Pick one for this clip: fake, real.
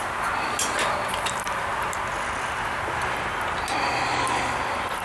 real